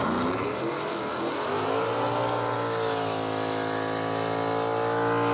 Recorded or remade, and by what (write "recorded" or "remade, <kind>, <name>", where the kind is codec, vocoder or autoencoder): recorded